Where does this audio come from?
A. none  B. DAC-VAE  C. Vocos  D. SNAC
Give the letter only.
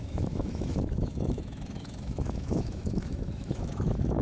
B